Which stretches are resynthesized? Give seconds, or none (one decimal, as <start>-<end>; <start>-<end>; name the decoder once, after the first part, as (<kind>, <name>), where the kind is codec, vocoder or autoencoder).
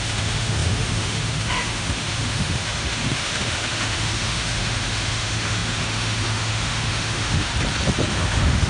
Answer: 0.0-7.5 (autoencoder, DAC-VAE); 8.1-8.7